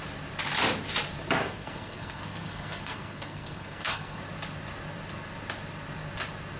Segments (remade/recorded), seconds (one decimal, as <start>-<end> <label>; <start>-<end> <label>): 0.0-1.4 recorded; 1.4-4.2 remade; 4.2-6.6 recorded